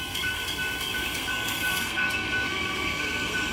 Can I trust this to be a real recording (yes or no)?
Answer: no